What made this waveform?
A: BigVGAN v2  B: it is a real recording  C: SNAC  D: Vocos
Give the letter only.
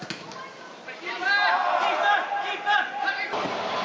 B